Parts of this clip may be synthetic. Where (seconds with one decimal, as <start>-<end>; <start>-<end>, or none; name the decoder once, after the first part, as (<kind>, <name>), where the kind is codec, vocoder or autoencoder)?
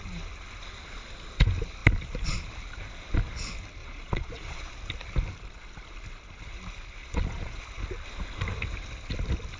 3.8-4.7 (vocoder, Vocos); 7.0-7.6